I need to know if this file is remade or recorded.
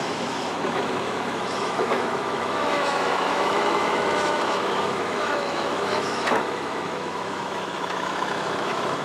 remade